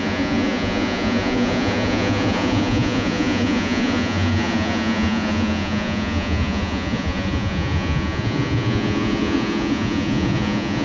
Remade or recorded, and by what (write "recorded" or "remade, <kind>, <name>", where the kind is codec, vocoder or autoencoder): remade, vocoder, Vocos